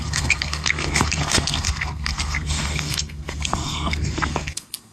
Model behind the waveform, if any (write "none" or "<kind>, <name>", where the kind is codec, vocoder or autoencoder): codec, SNAC